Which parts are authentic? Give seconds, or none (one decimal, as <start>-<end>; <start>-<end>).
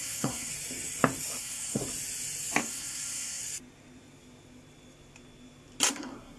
0.5-1.4; 1.8-2.6; 3.4-5.9